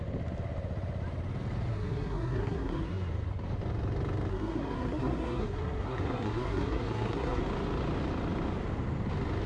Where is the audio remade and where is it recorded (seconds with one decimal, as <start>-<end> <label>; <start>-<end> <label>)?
0.0-1.7 recorded; 1.7-3.1 remade; 3.1-4.3 recorded; 4.3-7.4 remade; 7.4-9.5 recorded